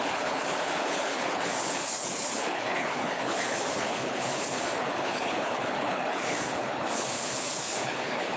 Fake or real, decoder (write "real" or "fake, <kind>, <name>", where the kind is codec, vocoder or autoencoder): fake, codec, HILCodec